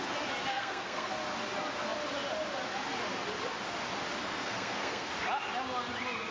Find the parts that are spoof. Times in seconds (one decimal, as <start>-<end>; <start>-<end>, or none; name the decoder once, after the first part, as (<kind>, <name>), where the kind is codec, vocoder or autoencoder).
0.5-1.1 (codec, SNAC); 4.2-5.1